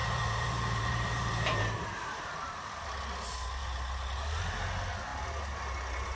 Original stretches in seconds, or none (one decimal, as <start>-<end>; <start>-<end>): 2.8-6.2